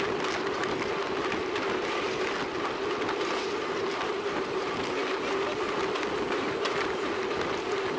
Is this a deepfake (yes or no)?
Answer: no